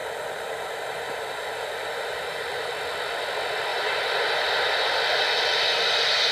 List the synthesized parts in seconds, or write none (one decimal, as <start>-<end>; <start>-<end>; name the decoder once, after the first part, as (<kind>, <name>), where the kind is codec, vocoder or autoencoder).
0.0-2.7 (vocoder, BigVGAN v2); 3.7-4.7

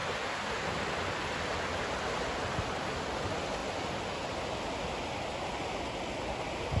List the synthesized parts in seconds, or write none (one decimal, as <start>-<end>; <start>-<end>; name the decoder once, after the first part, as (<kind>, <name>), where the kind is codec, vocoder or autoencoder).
none